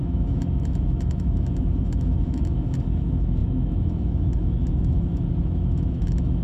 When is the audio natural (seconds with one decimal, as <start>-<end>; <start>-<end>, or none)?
none